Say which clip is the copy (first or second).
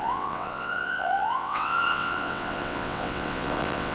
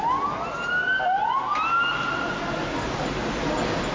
first